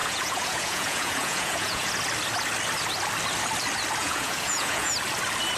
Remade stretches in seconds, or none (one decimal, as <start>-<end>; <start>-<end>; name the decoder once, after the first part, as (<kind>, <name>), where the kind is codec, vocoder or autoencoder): 0.0-1.9 (vocoder, Vocos); 4.0-4.9